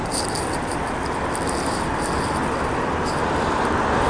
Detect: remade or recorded remade